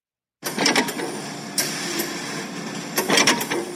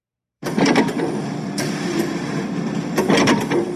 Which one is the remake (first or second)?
second